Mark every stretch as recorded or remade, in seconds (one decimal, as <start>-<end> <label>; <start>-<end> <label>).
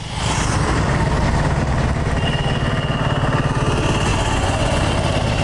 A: 0.0-4.1 recorded; 4.1-4.8 remade; 4.8-5.4 recorded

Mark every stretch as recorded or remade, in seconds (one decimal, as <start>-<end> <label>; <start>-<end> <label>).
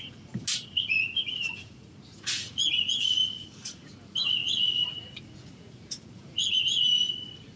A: 0.0-0.7 recorded; 0.7-3.9 remade; 3.9-4.4 recorded; 4.4-6.6 remade; 6.6-7.6 recorded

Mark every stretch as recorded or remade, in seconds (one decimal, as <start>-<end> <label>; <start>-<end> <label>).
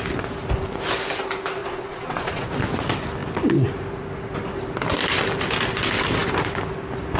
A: 0.0-1.6 recorded; 1.6-2.5 remade; 2.5-7.2 recorded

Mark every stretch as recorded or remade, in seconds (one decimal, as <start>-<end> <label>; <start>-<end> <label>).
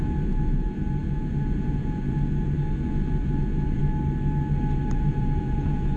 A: 0.0-3.8 remade; 3.8-4.9 recorded; 4.9-6.0 remade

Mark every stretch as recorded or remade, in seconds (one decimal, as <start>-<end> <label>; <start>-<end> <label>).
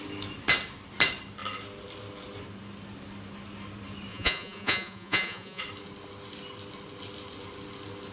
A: 0.0-4.1 recorded; 4.1-5.6 remade; 5.6-8.1 recorded